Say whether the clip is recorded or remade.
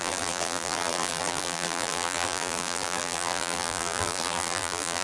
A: remade